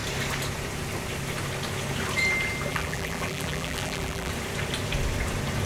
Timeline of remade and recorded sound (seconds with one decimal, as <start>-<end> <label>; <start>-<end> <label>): 0.0-2.7 recorded; 2.7-4.3 remade; 4.3-5.7 recorded